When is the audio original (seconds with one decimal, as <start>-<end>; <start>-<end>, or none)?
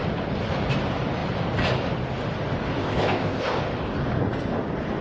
0.0-2.8; 3.6-5.0